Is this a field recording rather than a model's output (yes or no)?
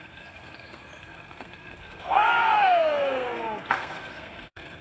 no